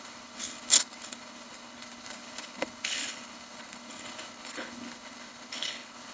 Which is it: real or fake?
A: fake